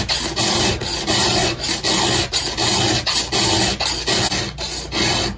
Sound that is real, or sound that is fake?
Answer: real